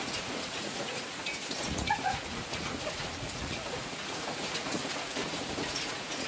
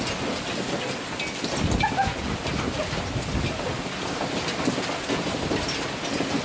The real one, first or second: second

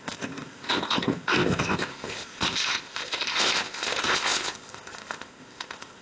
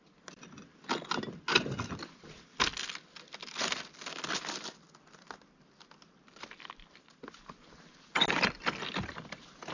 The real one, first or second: second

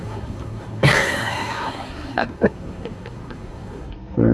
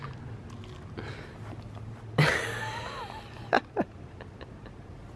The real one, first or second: second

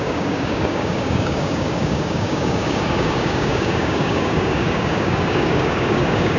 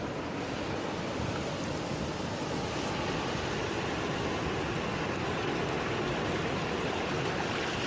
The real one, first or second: second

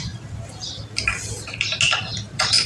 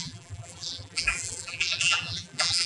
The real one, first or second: first